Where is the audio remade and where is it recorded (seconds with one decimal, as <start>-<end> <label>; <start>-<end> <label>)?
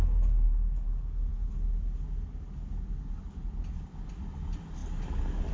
0.0-5.5 recorded